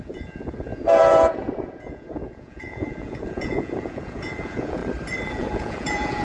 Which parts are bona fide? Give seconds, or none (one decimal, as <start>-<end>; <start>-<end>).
4.8-5.3